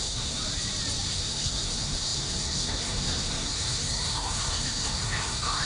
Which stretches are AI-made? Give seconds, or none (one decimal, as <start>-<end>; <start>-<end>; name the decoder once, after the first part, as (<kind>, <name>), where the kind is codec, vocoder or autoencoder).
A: 0.0-0.4 (codec, SNAC); 1.1-5.7